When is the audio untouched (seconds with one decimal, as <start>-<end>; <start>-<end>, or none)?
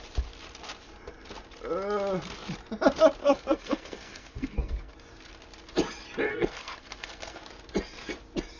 0.0-3.2; 4.9-6.3; 7.4-8.6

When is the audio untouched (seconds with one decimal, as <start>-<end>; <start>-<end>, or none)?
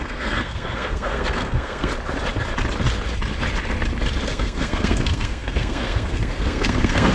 1.9-4.3